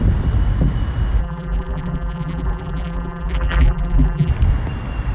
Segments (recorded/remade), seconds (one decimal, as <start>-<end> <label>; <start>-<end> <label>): 0.0-1.2 recorded; 1.2-4.3 remade; 4.3-5.1 recorded